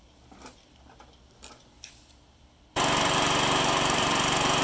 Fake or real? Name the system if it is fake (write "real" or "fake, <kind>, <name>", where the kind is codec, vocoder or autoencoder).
fake, vocoder, BigVGAN v2